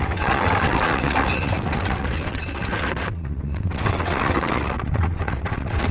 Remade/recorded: remade